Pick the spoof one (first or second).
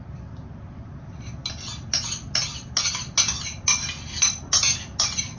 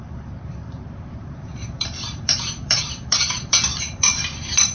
second